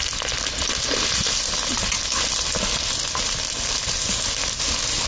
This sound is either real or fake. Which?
real